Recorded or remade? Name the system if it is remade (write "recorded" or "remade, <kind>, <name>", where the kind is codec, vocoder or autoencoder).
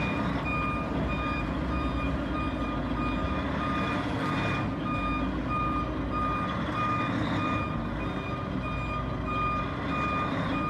recorded